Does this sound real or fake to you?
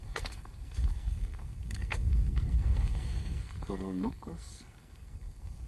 fake